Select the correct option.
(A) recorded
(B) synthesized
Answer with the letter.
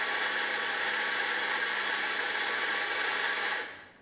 A